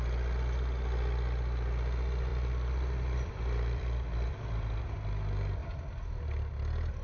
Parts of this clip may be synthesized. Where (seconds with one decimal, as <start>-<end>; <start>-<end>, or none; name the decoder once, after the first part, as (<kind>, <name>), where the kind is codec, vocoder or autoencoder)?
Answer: 2.3-4.8 (vocoder, BigVGAN v2); 5.6-6.5